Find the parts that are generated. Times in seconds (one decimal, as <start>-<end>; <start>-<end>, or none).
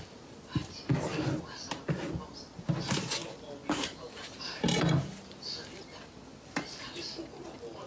3.6-4.4